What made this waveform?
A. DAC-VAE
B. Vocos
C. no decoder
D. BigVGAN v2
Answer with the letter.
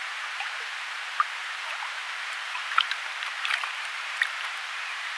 D